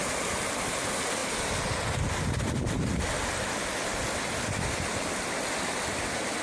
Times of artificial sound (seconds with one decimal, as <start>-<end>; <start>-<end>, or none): none